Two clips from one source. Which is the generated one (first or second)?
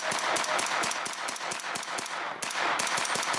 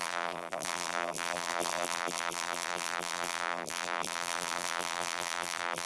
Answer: second